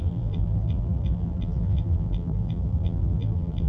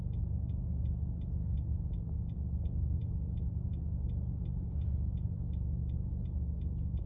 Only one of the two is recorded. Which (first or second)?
second